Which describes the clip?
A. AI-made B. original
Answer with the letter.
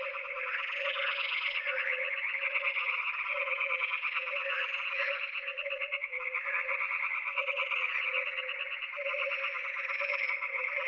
A